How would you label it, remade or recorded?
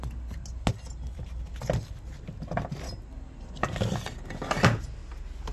recorded